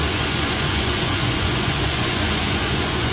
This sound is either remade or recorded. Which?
remade